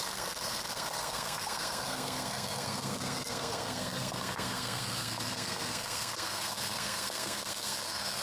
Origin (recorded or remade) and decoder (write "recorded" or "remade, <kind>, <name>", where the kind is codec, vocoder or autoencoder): remade, codec, SNAC